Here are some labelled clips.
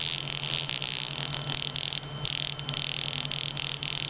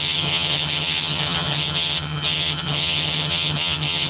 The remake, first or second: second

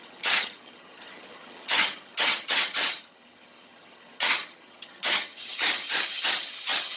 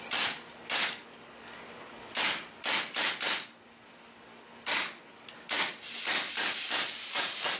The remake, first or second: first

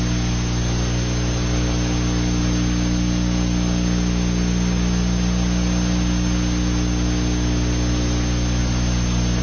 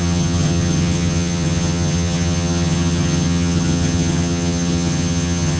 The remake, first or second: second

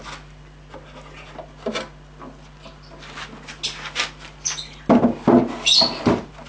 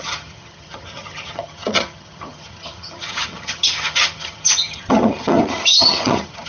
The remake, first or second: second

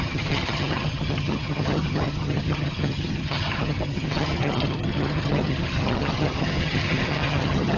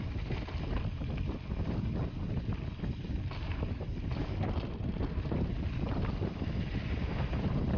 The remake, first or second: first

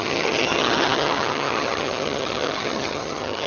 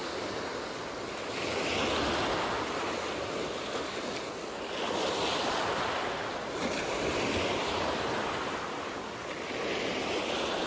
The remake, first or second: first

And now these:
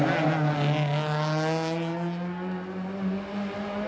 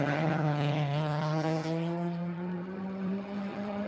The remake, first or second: second